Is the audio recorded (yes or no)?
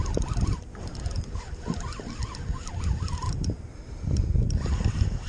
yes